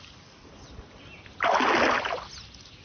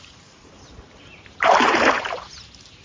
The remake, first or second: second